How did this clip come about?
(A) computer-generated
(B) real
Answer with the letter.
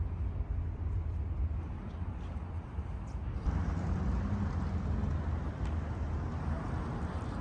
B